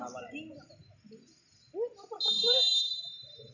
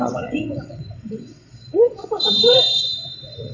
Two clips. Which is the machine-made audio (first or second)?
second